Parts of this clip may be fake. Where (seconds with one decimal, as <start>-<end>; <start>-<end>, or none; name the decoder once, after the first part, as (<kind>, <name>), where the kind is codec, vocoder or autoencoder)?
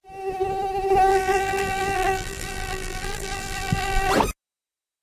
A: 1.1-4.1 (vocoder, BigVGAN v2)